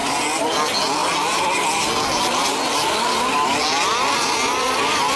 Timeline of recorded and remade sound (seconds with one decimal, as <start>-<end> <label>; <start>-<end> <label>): 0.0-5.2 recorded